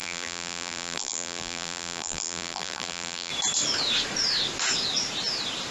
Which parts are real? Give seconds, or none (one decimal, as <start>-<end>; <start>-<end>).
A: 3.3-5.7